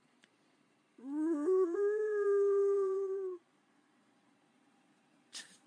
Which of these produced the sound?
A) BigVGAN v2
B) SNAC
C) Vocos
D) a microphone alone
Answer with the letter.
C